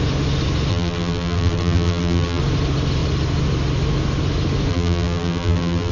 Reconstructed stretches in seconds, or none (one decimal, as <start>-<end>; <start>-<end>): 0.7-2.4; 4.7-5.9